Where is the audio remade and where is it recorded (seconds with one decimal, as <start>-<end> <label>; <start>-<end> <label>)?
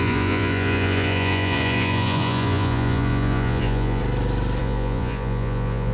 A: 0.0-4.0 remade; 4.0-4.6 recorded; 4.6-5.9 remade